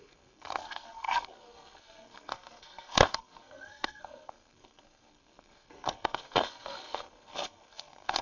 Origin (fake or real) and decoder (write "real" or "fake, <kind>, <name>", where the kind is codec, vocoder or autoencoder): fake, codec, SNAC